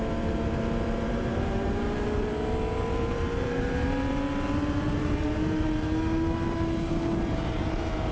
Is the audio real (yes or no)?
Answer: no